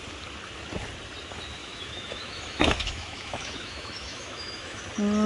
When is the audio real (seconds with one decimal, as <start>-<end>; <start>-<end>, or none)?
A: 0.0-1.6; 4.8-5.3